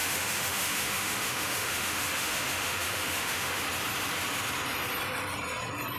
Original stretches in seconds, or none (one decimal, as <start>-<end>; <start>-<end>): 3.6-6.0